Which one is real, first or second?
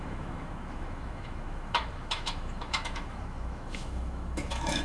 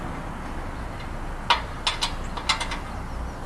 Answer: second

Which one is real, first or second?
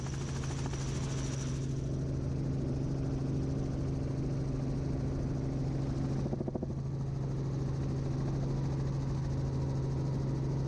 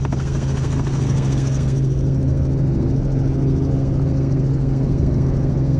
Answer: first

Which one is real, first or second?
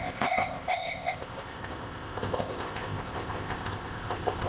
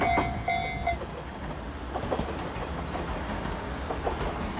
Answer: second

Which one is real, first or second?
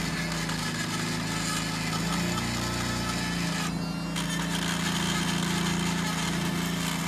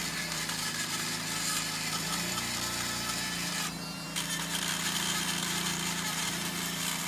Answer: first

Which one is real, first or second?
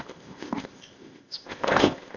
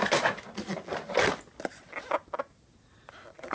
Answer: second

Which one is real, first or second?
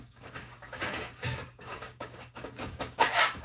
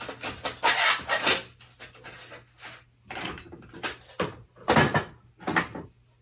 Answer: second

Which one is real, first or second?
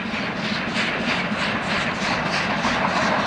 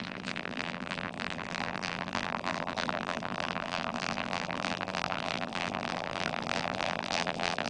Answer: first